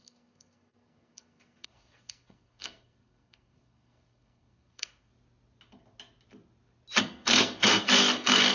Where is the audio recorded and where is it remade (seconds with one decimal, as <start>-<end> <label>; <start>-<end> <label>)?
0.0-5.1 remade; 5.1-7.0 recorded; 7.0-8.5 remade